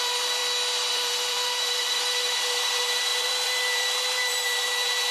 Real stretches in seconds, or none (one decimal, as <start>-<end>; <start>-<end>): 0.4-0.9